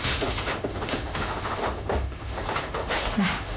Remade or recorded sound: remade